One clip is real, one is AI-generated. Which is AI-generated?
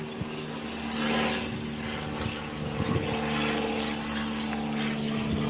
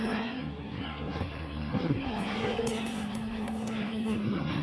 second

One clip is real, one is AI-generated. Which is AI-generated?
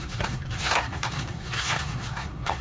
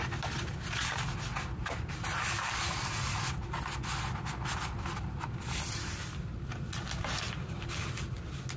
first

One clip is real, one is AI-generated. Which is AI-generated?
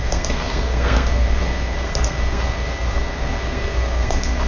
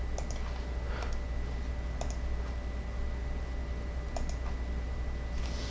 first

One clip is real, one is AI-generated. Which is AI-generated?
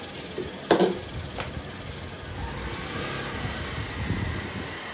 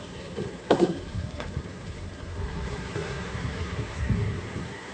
second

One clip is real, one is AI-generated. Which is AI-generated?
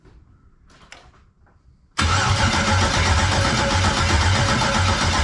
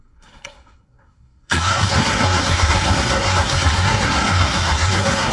second